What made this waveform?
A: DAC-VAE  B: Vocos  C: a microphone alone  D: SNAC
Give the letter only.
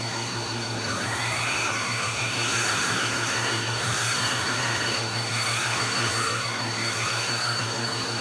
D